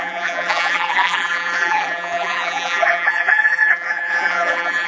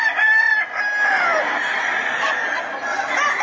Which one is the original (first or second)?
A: second